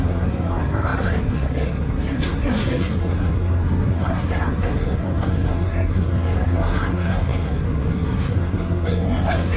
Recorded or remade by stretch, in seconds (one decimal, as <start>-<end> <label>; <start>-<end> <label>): 0.0-9.6 remade